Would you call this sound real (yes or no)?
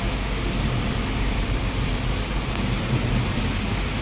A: yes